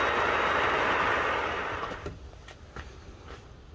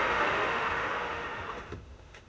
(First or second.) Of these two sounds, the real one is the first